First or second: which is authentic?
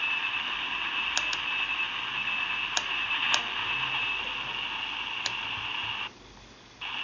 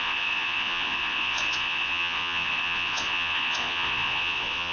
first